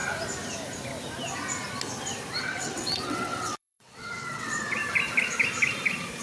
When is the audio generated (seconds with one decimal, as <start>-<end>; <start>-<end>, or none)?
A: 2.4-4.8